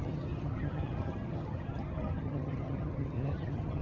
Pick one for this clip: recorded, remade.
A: remade